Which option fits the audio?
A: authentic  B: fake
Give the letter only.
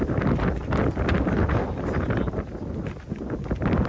A